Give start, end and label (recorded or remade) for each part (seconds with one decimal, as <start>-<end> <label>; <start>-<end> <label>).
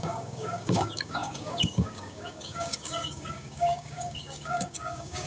0.0-5.3 remade